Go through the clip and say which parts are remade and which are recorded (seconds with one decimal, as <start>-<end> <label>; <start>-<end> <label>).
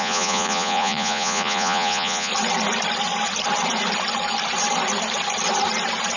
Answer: 0.0-2.3 remade; 2.3-6.2 recorded